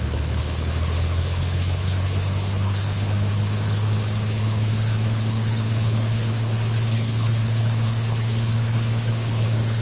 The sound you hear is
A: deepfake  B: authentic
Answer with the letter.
A